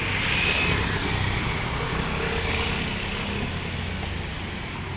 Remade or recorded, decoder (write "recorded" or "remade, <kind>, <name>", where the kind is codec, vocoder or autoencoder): recorded